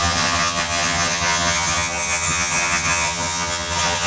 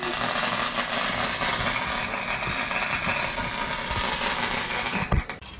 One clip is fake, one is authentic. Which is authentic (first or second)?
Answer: second